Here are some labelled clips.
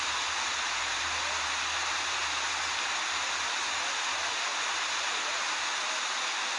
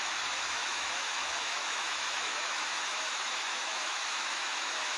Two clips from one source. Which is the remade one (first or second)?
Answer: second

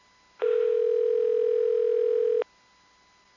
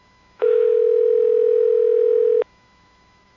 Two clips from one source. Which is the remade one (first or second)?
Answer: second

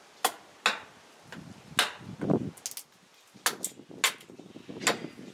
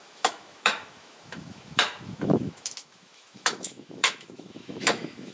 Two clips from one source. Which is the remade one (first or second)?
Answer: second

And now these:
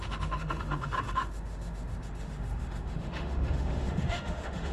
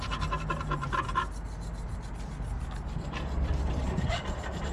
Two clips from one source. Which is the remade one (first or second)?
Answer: first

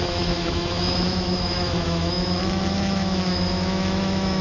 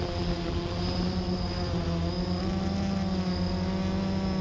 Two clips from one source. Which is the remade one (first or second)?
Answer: first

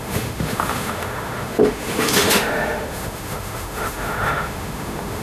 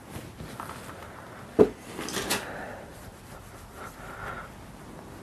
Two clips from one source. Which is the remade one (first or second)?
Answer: first